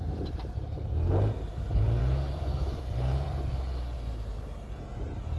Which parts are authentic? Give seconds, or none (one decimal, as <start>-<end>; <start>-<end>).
0.0-2.0; 3.5-5.4